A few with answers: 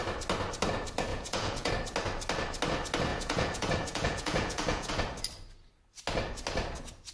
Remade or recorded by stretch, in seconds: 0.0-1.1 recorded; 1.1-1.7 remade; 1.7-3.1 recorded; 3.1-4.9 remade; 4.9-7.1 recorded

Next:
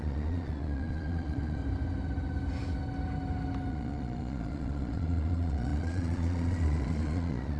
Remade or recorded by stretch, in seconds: 0.0-1.6 remade; 1.6-3.7 recorded; 3.7-7.6 remade

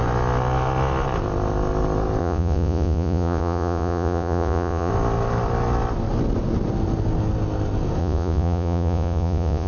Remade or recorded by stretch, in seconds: 0.0-2.2 recorded; 2.2-4.9 remade; 4.9-8.0 recorded; 8.0-9.7 remade

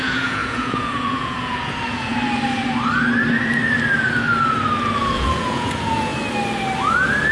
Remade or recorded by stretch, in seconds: 0.0-2.1 remade; 2.1-5.0 recorded; 5.0-6.1 remade; 6.1-7.3 recorded